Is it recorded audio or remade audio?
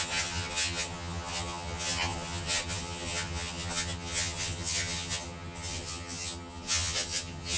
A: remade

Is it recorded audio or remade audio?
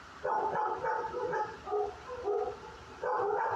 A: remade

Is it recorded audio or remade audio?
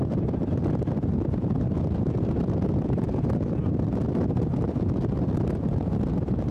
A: recorded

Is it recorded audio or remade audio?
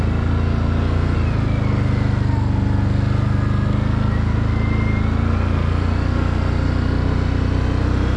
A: recorded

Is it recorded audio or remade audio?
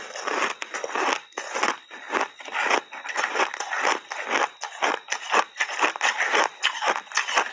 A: recorded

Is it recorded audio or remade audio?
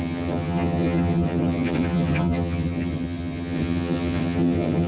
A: remade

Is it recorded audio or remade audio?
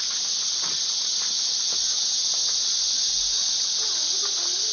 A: recorded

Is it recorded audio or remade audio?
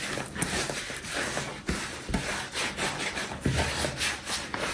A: recorded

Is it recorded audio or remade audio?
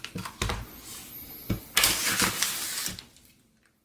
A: recorded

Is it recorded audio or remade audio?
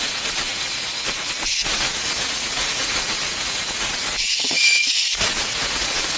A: remade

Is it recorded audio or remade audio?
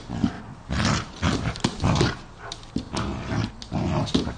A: recorded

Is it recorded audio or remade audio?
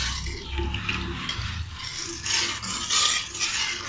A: recorded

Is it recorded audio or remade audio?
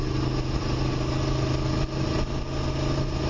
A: recorded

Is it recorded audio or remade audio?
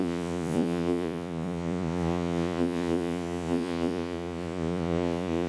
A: remade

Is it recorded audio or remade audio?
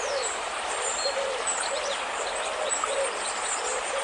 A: recorded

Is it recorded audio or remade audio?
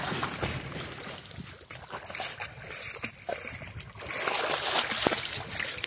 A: recorded